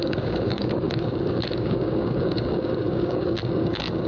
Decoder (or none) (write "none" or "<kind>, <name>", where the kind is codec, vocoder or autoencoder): codec, DAC